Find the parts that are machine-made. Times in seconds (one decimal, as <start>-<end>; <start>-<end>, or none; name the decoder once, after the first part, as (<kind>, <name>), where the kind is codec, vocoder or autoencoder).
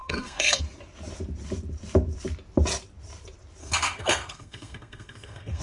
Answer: 0.0-0.6 (codec, SNAC); 3.6-5.6